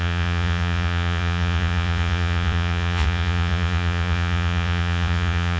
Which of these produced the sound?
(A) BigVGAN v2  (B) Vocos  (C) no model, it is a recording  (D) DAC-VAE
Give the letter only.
B